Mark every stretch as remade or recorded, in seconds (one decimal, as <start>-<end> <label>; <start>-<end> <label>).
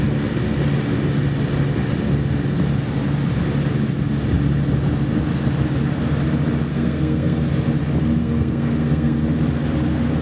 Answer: 0.0-6.7 recorded; 6.7-7.4 remade; 7.4-8.2 recorded; 8.2-9.2 remade; 9.2-10.2 recorded